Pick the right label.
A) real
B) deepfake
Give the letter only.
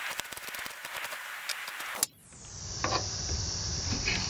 A